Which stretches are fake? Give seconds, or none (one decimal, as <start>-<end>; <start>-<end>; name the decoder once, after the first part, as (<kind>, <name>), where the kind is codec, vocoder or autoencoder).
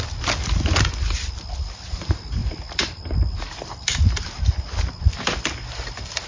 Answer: none